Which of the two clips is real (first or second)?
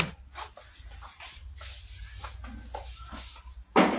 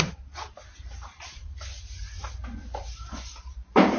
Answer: first